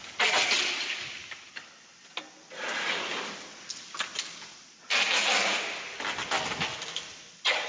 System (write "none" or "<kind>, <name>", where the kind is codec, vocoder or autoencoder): none